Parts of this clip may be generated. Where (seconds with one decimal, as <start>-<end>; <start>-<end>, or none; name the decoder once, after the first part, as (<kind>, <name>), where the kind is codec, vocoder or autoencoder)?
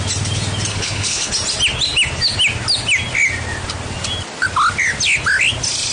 0.7-1.3 (codec, HILCodec)